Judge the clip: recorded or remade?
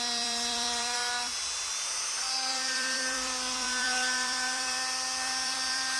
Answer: remade